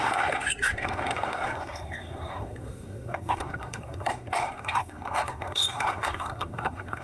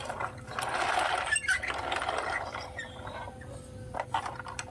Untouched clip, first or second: second